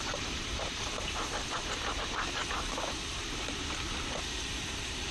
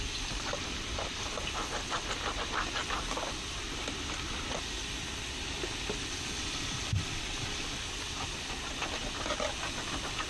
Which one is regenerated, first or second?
first